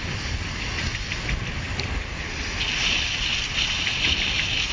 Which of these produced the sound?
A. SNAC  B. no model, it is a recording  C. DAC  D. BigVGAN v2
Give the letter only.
B